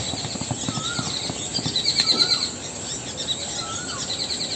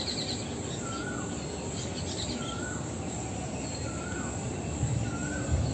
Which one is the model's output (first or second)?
second